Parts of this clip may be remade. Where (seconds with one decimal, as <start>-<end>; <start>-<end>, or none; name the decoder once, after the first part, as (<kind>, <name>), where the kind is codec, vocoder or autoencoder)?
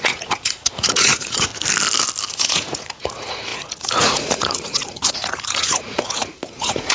0.0-1.5 (vocoder, Vocos); 2.3-6.9